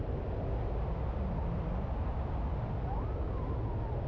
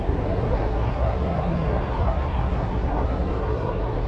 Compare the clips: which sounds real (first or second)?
first